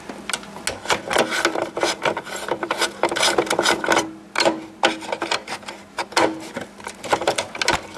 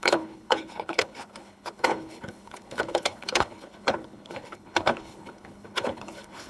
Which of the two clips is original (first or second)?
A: first